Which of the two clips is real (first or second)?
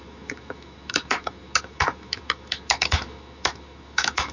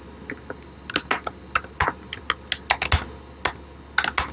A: second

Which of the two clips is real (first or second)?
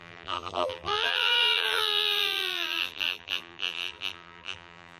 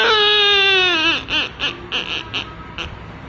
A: second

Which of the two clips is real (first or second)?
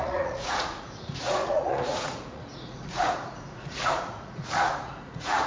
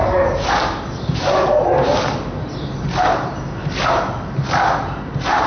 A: second